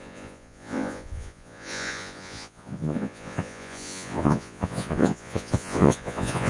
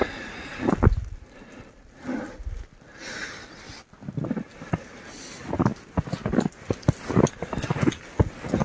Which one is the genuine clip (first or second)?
second